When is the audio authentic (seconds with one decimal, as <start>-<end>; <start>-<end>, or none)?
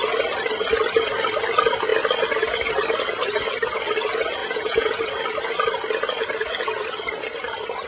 0.0-4.4; 5.0-7.9